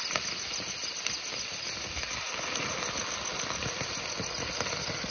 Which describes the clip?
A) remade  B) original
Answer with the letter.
B